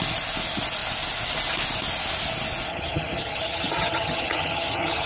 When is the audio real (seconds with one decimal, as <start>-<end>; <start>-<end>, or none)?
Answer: 0.0-2.7